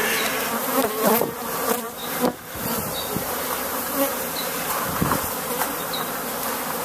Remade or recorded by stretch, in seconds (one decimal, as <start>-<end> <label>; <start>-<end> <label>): 0.0-2.0 remade; 2.0-3.3 recorded; 3.3-6.8 remade